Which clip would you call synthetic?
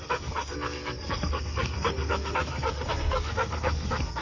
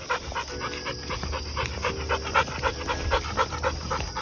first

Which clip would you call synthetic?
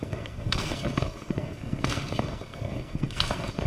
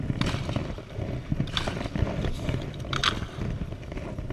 first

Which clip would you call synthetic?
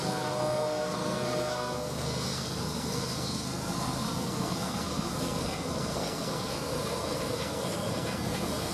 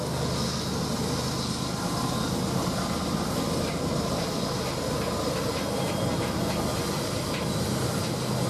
first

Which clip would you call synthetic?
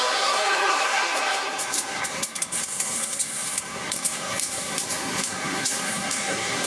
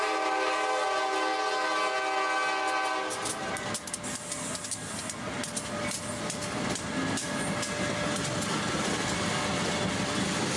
first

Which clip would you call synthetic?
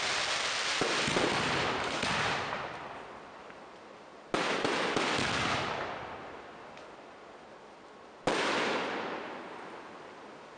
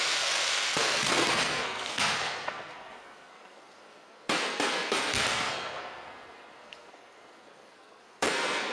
second